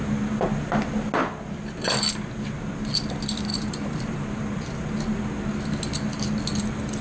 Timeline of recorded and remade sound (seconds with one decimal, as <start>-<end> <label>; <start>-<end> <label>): 0.0-3.5 recorded; 3.5-4.6 remade; 4.6-7.0 recorded